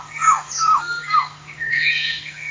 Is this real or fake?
fake